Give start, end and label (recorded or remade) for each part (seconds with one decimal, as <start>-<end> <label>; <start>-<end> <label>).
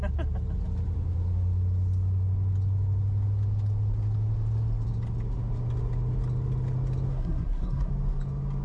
0.0-7.1 recorded; 7.1-7.9 remade; 7.9-8.6 recorded